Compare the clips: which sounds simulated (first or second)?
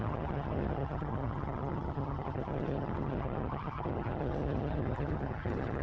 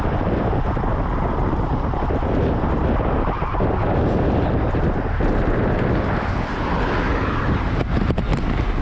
first